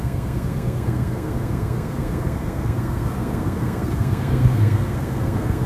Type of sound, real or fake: fake